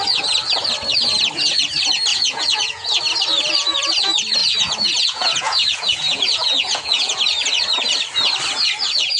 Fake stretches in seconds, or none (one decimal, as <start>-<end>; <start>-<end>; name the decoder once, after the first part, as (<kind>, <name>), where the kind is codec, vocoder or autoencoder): 2.1-3.0 (vocoder, Vocos); 4.4-7.2